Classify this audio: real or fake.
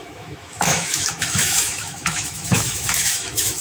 fake